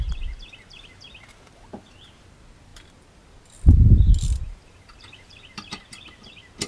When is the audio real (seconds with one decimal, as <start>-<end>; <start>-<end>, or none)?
0.0-2.7